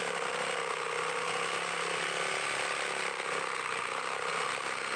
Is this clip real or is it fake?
real